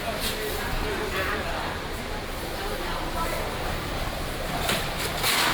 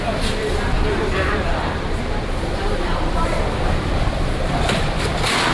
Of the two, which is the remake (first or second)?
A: second